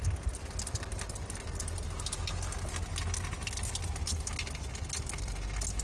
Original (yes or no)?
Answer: yes